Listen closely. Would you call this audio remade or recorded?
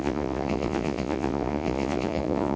remade